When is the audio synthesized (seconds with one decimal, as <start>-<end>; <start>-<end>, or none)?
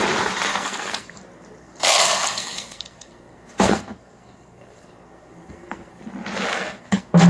0.5-1.2; 1.6-6.0; 6.5-7.3